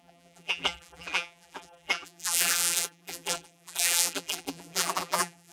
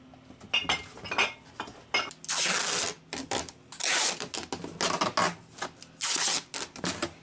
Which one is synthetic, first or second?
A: first